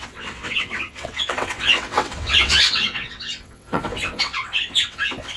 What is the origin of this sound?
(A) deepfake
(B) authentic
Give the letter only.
A